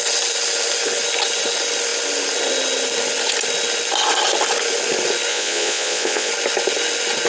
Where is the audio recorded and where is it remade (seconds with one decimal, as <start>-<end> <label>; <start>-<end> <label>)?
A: 0.0-5.3 recorded; 5.3-6.3 remade; 6.3-7.3 recorded